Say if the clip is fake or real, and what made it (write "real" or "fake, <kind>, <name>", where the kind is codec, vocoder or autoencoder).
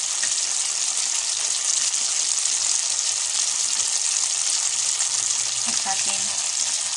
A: real